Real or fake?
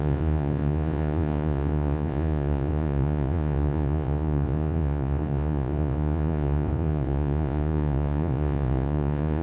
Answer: fake